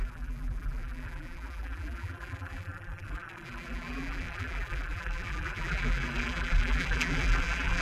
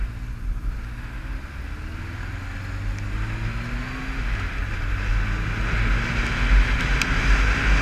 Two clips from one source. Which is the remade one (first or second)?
first